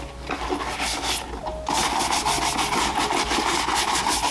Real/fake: real